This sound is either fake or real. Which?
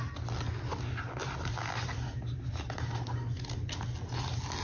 real